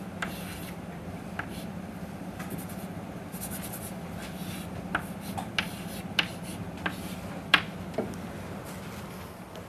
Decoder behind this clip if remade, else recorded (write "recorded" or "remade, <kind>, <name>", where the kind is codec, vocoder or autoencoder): recorded